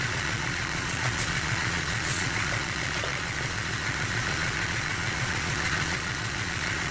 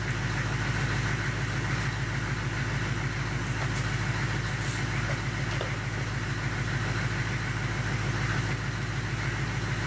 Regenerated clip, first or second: first